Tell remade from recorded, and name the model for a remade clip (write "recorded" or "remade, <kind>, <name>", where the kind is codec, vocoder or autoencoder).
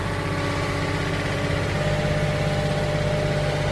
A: recorded